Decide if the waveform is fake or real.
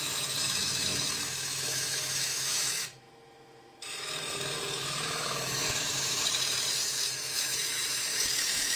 fake